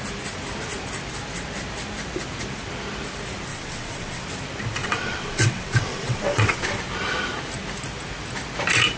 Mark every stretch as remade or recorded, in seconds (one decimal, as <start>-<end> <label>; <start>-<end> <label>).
0.0-3.5 recorded; 3.5-4.2 remade; 4.2-4.8 recorded; 4.8-6.8 remade; 6.8-9.0 recorded